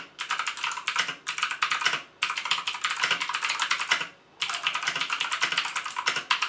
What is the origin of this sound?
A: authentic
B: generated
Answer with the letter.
A